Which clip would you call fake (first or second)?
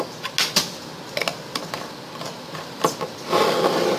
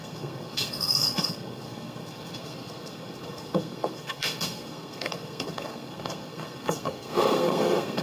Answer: second